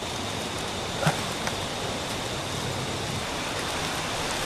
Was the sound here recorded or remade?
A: recorded